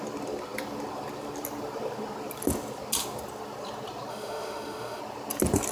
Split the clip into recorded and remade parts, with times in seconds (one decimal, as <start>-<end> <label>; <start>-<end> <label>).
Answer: 0.0-4.1 recorded; 4.1-5.0 remade; 5.0-5.7 recorded